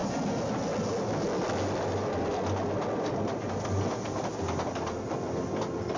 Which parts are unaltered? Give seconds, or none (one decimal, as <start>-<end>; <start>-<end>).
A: 0.0-6.0